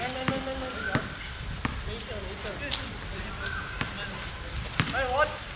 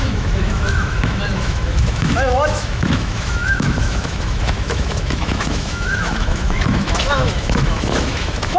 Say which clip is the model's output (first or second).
second